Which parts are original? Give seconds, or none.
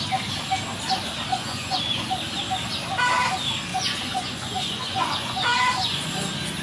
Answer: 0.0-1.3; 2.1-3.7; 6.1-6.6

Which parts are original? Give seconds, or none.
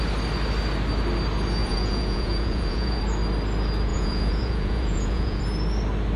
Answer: 0.0-1.6; 3.0-3.9; 5.4-6.2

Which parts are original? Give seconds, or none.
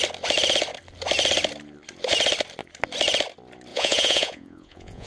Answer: 0.0-3.7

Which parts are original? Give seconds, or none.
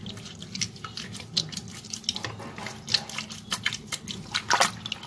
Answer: 0.0-5.1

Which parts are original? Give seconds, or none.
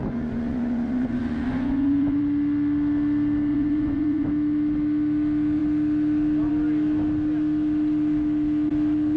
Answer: 2.2-3.5; 4.3-9.2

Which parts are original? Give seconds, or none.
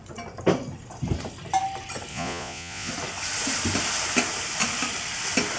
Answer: 0.0-2.1; 2.9-5.6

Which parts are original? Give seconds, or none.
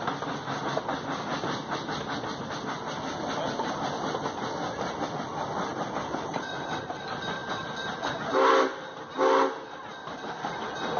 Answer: 0.0-11.0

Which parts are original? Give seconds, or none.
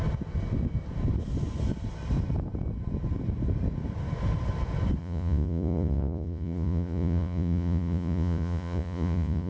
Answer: 0.0-5.0